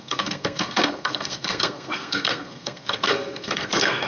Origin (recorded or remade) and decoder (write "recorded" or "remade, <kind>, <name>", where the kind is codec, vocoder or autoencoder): remade, codec, SNAC